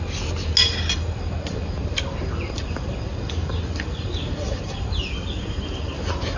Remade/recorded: recorded